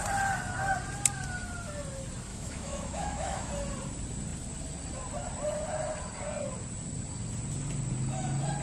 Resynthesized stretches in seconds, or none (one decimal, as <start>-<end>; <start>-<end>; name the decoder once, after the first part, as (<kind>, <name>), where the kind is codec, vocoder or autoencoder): 2.3-3.5 (autoencoder, DAC-VAE)